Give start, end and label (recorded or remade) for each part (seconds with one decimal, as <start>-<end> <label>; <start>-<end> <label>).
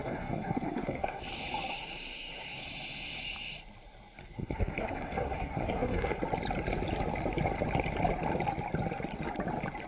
0.0-1.2 remade; 1.2-1.7 recorded; 1.7-2.6 remade; 2.6-4.2 recorded; 4.2-6.2 remade; 6.2-9.9 recorded